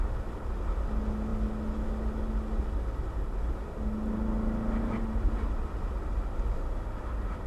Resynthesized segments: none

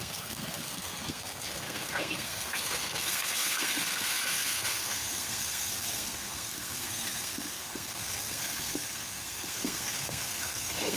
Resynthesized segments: 0.0-11.0 (codec, SNAC)

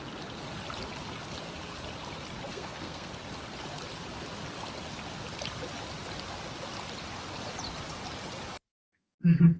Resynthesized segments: 2.5-3.1 (codec, SNAC); 8.7-9.6

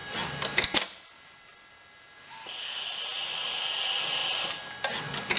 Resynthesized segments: none